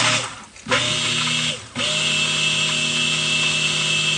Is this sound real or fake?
real